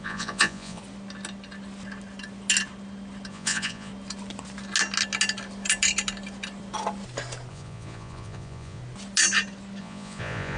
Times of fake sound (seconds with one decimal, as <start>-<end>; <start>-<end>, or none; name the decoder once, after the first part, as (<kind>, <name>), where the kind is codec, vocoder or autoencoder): 0.0-0.8 (vocoder, Vocos); 3.3-3.9; 7.5-8.8; 9.8-10.6